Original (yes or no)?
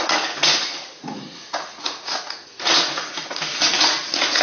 no